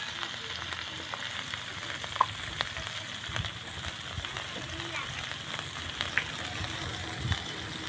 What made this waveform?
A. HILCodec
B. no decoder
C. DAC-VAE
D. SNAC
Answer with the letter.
B